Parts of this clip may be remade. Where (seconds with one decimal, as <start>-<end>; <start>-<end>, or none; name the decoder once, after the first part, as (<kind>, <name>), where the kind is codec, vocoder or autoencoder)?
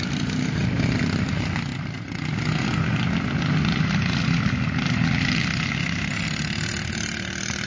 none